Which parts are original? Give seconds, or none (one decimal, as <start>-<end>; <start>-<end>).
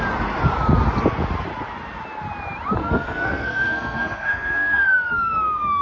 0.0-2.8